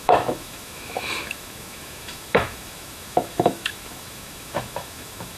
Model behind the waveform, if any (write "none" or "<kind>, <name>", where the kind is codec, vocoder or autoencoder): autoencoder, DAC-VAE